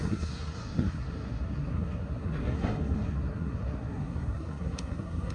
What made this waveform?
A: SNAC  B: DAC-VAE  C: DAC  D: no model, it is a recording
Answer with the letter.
A